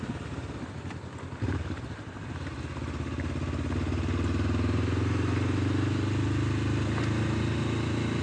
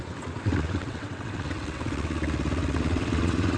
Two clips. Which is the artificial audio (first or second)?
second